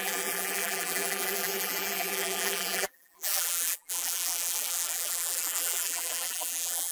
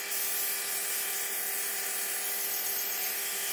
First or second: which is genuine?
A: second